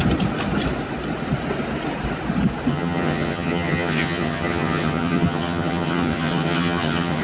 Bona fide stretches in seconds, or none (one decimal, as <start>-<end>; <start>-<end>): 0.0-2.7